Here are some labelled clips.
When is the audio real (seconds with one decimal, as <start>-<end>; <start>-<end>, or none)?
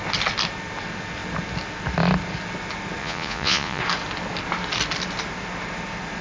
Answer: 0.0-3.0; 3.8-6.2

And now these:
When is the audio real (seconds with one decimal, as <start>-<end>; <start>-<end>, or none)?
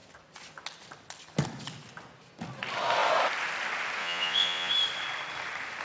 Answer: 0.0-4.0; 4.7-5.8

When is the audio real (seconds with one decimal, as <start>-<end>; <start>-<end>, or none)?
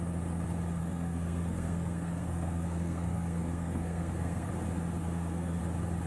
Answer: 0.0-0.8; 4.5-5.0; 5.6-6.1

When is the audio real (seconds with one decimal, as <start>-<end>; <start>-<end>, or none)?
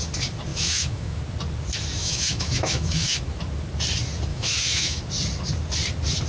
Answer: 0.0-0.5; 1.2-2.0; 3.2-4.3; 5.0-6.3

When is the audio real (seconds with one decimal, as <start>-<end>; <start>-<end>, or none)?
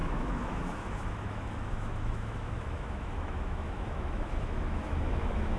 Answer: none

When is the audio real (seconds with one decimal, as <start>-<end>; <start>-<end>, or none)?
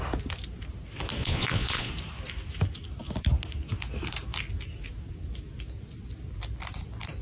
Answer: 0.0-1.2; 1.9-7.2